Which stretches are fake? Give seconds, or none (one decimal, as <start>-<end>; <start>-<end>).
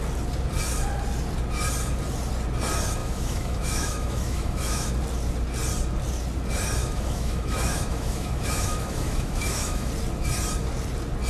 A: 3.0-4.9; 6.8-9.9